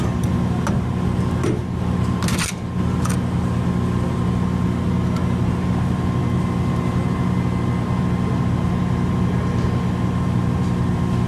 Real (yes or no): yes